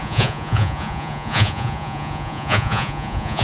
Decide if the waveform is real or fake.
fake